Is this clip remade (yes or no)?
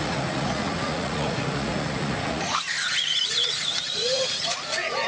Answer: yes